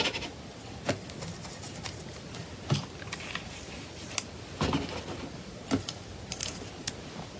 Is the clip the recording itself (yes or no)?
yes